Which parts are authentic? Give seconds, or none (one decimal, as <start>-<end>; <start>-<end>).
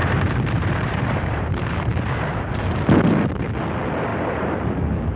2.8-4.1; 4.8-5.2